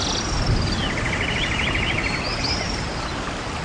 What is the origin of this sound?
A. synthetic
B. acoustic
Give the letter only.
B